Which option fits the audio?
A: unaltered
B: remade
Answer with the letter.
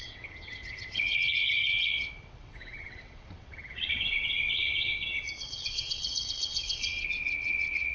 B